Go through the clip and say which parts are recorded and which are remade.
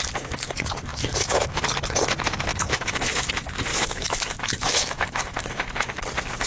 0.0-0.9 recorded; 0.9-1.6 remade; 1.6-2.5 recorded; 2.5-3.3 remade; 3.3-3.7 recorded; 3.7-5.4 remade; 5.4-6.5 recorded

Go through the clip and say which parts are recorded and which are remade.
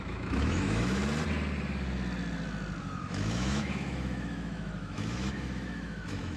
0.0-1.0 remade; 1.0-2.8 recorded; 2.8-6.4 remade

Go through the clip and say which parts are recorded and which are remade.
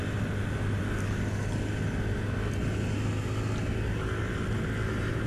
0.0-5.3 recorded